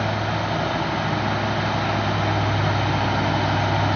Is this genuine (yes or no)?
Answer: yes